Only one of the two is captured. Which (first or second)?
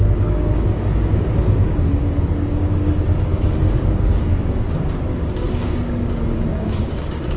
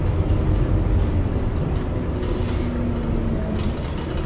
second